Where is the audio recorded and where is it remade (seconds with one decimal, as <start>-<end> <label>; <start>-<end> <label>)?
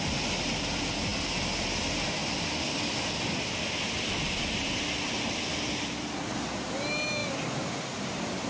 0.0-2.2 recorded; 2.2-4.8 remade; 4.8-7.2 recorded; 7.2-8.5 remade